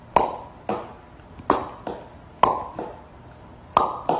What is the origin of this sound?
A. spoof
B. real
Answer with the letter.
B